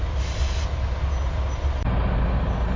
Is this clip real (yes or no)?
yes